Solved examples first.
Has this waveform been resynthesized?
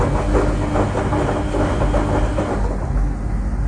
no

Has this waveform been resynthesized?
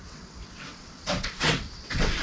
yes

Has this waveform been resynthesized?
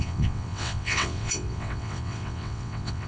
yes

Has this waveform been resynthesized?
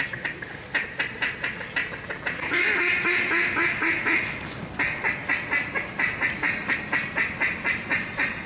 no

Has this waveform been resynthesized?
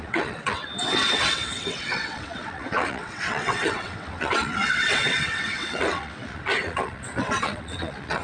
yes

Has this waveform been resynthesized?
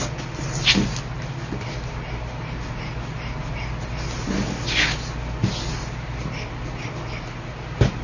no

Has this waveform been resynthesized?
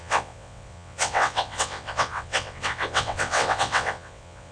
yes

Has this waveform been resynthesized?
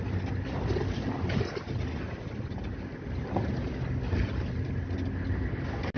no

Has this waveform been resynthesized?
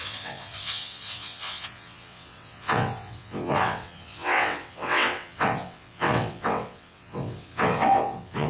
yes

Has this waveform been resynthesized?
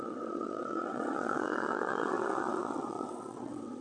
yes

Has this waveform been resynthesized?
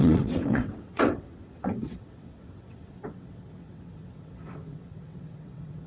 yes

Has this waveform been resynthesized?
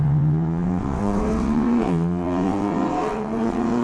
yes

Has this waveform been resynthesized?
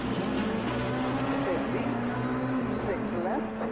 no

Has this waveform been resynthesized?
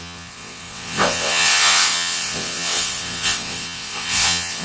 yes